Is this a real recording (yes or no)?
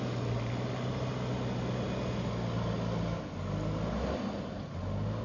yes